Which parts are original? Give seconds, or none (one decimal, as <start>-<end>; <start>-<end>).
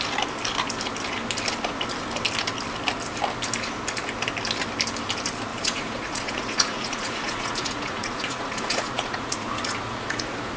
0.0-5.5